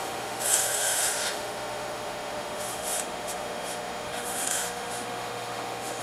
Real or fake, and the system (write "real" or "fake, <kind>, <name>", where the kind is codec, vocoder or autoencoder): fake, autoencoder, DAC-VAE